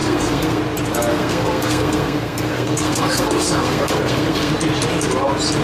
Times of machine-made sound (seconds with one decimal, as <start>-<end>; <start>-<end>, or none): 0.0-0.6; 1.1-4.5